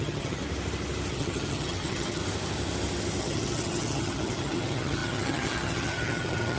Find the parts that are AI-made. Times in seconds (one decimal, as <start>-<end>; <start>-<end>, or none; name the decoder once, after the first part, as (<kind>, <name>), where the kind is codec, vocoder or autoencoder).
0.0-0.4 (vocoder, HiFi-GAN); 1.1-2.2; 3.2-6.6